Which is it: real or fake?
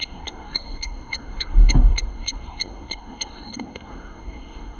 fake